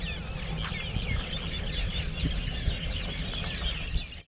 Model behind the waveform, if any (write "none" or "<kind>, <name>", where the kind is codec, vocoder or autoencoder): none